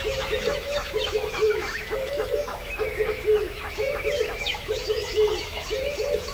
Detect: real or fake fake